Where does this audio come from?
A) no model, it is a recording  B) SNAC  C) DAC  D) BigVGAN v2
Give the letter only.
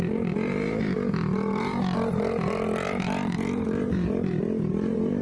D